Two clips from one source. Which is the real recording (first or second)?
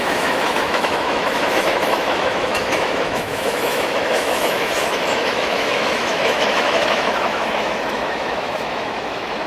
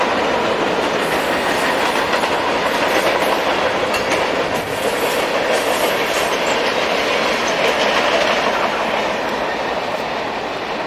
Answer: second